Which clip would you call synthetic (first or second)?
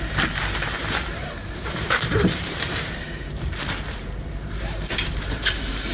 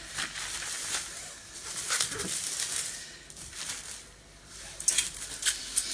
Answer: first